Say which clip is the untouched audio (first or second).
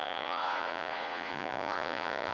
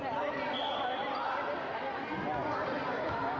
second